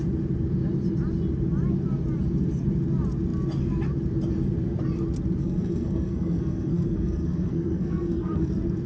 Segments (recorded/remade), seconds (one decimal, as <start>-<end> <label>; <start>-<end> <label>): 0.0-5.4 recorded; 5.4-8.5 remade; 8.5-8.9 recorded